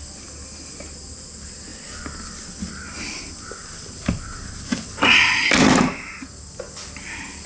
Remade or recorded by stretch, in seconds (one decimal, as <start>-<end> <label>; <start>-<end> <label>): 0.0-7.5 recorded